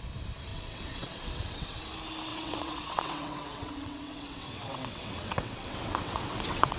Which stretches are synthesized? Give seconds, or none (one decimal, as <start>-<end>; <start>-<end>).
0.5-1.8; 2.3-6.8